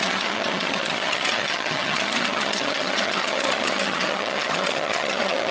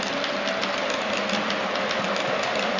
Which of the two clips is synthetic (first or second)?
first